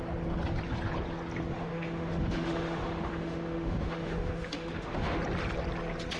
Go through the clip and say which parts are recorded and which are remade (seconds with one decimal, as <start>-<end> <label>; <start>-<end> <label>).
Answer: 0.0-1.6 recorded; 1.6-5.2 remade; 5.2-6.2 recorded